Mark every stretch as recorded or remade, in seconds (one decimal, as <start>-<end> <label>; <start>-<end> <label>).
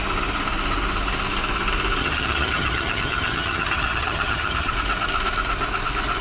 0.0-2.0 recorded; 2.0-4.7 remade; 4.7-6.2 recorded